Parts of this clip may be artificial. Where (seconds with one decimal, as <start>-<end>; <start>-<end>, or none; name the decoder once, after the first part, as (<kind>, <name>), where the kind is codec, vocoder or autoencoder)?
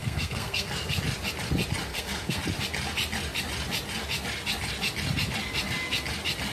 0.0-1.0 (codec, SNAC); 1.9-2.4